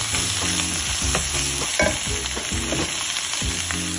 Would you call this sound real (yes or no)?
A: yes